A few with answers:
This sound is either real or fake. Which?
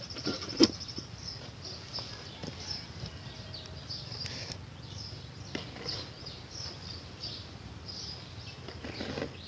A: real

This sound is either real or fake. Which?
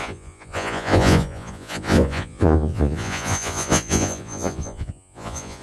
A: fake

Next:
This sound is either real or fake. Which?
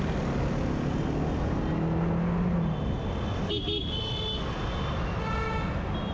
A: real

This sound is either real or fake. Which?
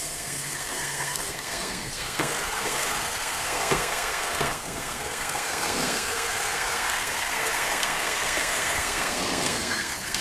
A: fake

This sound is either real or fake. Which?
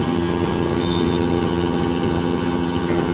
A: fake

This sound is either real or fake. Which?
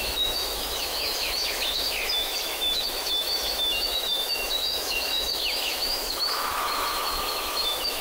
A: fake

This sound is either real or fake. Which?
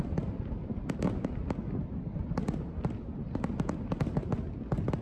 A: real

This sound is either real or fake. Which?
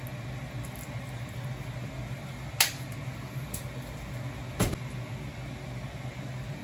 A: real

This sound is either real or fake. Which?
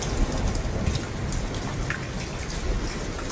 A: real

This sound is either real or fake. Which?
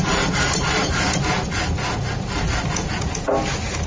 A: real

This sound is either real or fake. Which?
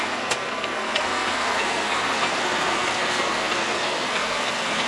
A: fake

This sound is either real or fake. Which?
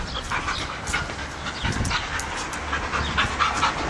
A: real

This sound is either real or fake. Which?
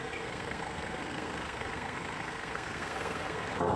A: fake